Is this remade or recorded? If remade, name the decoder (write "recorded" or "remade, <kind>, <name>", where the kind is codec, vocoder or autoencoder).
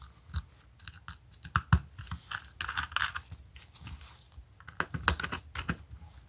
recorded